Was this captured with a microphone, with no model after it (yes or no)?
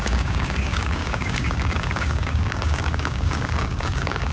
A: no